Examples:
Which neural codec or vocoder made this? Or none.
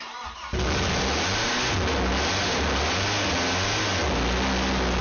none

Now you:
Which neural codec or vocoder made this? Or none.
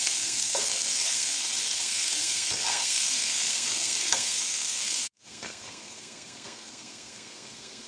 codec, SNAC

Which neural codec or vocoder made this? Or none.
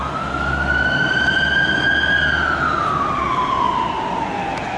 none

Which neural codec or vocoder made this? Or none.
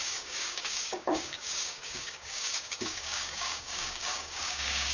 codec, DAC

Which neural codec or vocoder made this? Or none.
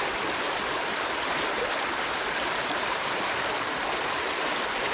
none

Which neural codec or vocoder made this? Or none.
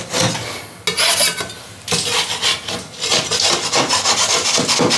none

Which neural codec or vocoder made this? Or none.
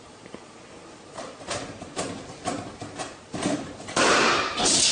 vocoder, BigVGAN v2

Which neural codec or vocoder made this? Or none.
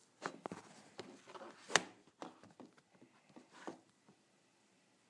none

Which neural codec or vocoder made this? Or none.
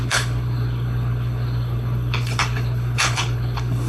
codec, HILCodec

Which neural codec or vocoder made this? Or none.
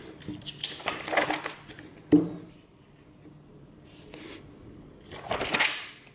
none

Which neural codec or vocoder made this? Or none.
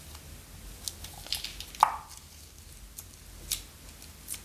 none